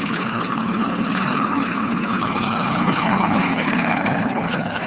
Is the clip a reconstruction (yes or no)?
yes